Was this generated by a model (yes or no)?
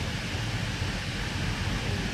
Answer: no